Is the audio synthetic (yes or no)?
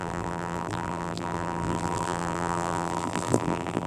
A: yes